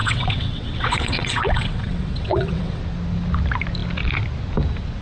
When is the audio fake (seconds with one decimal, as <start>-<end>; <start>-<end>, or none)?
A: 0.0-2.8